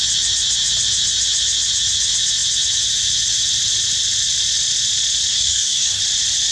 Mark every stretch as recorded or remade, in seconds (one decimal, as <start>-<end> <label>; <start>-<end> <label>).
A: 0.0-5.3 recorded; 5.3-6.0 remade; 6.0-6.5 recorded